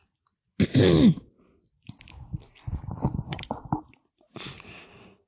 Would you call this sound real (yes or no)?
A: yes